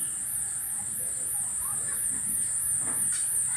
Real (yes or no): yes